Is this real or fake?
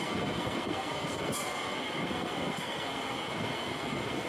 fake